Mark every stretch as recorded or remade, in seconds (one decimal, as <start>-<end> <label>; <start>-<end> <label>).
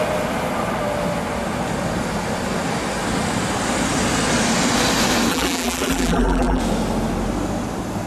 0.0-5.3 recorded; 5.3-6.6 remade; 6.6-8.1 recorded